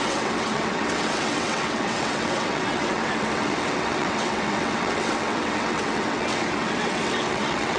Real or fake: fake